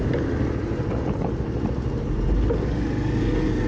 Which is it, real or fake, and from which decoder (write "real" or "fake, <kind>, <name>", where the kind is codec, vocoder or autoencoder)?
real